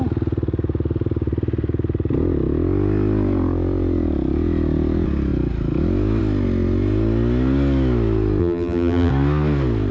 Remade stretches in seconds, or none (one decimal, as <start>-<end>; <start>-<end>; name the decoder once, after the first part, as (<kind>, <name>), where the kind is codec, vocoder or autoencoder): 8.4-9.1 (vocoder, BigVGAN v2)